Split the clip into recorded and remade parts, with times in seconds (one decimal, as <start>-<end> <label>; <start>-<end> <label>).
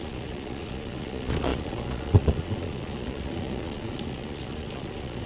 0.0-5.3 remade